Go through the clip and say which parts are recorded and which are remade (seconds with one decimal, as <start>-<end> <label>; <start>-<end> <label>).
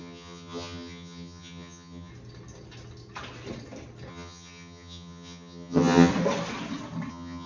0.0-2.1 remade; 2.1-4.1 recorded; 4.1-6.1 remade; 6.1-7.1 recorded; 7.1-7.5 remade